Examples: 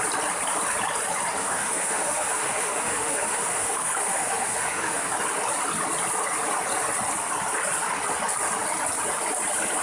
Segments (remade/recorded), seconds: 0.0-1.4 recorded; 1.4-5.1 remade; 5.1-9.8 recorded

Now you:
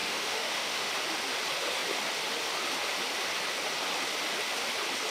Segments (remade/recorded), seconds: 0.0-0.9 remade; 0.9-5.1 recorded